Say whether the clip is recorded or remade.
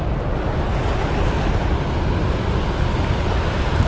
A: recorded